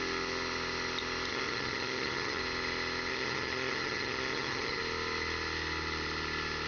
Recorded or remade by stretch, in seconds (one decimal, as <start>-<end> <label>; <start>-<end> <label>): 0.0-1.3 recorded; 1.3-2.4 remade; 2.4-3.1 recorded; 3.1-4.8 remade; 4.8-6.7 recorded